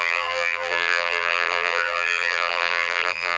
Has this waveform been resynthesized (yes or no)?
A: yes